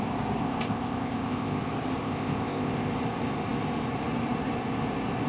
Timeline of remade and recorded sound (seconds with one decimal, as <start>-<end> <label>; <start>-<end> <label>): 0.0-0.4 recorded; 0.4-1.6 remade; 1.6-2.0 recorded; 2.0-2.9 remade; 2.9-5.3 recorded